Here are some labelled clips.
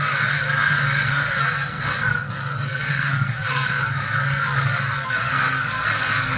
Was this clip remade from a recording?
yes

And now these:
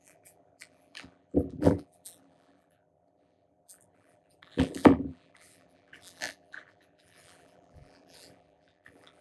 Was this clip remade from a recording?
yes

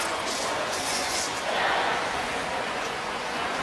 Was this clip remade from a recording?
yes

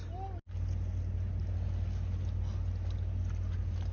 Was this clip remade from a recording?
no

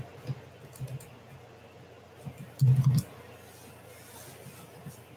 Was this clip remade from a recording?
no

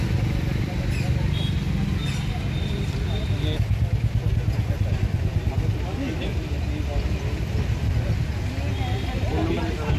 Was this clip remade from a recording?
no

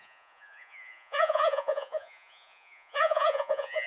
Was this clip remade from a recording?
yes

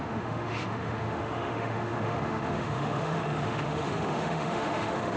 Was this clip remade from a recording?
yes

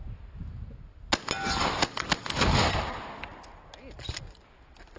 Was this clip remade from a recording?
no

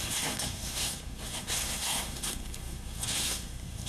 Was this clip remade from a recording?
yes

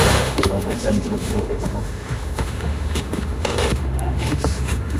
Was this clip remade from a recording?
yes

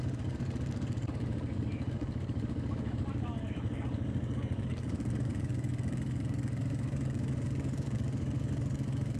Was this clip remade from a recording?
yes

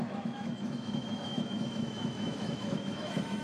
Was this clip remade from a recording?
yes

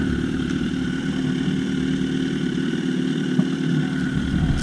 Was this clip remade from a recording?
no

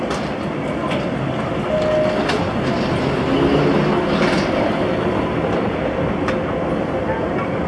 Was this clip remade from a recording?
no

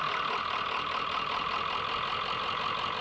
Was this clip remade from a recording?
no